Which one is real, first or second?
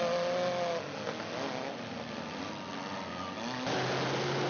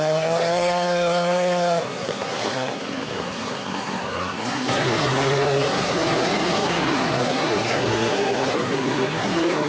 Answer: first